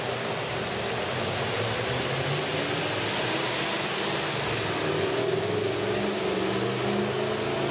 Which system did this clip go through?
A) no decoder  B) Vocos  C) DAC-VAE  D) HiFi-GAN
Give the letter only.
A